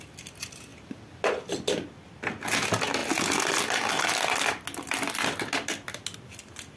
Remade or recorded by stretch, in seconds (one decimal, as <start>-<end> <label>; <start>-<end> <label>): 0.0-6.8 recorded